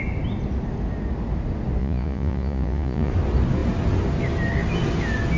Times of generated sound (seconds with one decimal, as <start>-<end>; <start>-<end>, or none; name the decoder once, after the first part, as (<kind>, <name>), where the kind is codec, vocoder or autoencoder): 1.8-3.1 (vocoder, Vocos)